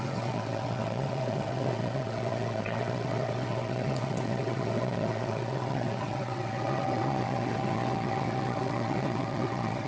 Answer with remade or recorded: remade